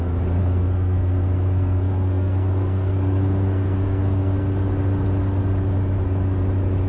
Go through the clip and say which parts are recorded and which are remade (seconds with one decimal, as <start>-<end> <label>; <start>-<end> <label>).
0.0-0.4 recorded; 0.4-4.5 remade; 4.5-6.9 recorded